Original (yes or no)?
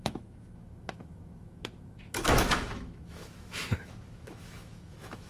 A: no